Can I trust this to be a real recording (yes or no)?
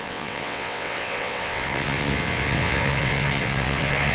no